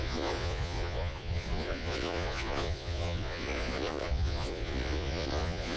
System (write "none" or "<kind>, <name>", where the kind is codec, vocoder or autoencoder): vocoder, Vocos